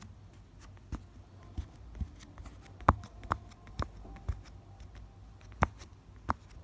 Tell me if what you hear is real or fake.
real